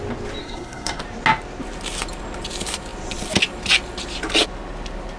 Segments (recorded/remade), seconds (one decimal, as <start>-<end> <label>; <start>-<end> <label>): 0.0-0.4 recorded; 0.4-1.0 remade; 1.0-5.2 recorded